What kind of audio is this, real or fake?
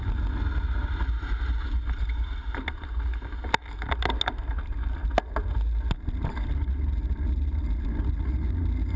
real